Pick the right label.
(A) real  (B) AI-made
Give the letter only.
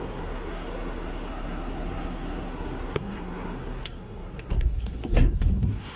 B